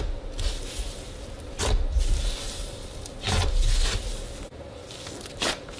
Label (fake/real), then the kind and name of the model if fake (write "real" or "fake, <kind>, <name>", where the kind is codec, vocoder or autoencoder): real